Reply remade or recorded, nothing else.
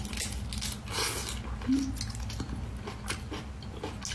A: recorded